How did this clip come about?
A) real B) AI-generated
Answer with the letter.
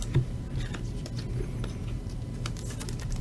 A